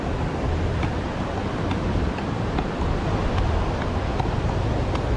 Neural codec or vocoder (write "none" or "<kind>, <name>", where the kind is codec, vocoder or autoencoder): none